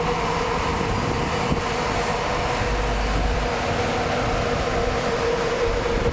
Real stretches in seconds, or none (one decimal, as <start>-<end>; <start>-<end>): 0.0-6.1